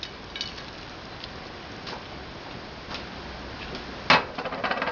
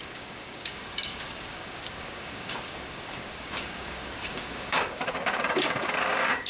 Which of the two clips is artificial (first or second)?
second